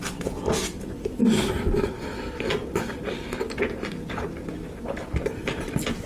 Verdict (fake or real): real